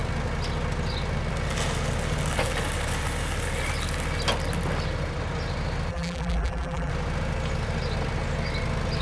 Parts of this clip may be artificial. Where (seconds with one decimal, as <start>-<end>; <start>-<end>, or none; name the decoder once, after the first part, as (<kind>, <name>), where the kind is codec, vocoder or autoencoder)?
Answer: 5.9-6.9 (vocoder, BigVGAN v2)